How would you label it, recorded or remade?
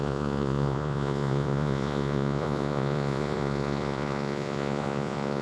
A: remade